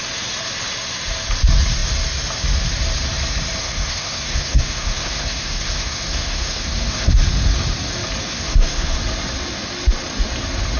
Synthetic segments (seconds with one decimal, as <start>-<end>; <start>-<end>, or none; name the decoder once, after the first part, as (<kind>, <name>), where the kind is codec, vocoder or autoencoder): 3.6-7.1 (codec, SNAC); 8.3-9.0